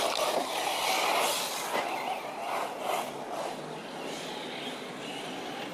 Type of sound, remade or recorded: recorded